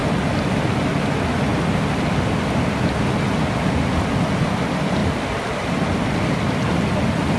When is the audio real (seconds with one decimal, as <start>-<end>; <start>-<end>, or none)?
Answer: 0.0-5.0; 6.6-7.4